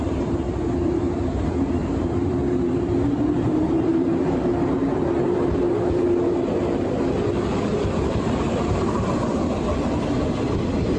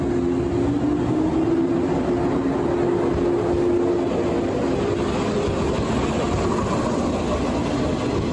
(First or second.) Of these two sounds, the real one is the second